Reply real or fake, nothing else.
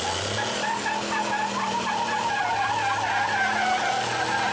real